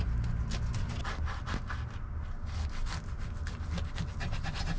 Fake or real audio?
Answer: real